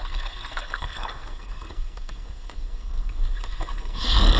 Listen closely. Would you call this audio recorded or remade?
remade